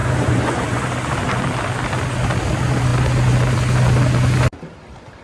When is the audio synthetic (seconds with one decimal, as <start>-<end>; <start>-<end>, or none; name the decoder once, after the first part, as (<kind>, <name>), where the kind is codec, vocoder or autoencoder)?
0.0-0.8 (vocoder, Vocos)